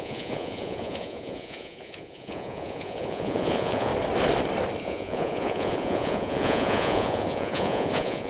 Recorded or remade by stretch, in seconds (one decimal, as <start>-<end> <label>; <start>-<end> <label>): 0.0-3.9 remade; 3.9-4.8 recorded; 4.8-8.3 remade